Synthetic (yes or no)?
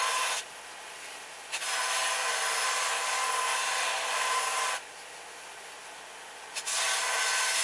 no